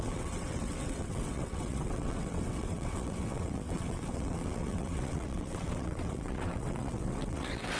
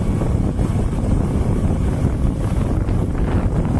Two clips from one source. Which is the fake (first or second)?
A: first